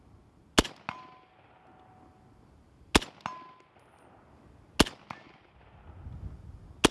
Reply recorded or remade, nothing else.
recorded